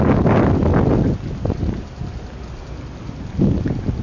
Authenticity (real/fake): real